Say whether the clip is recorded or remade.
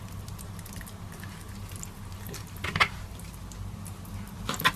recorded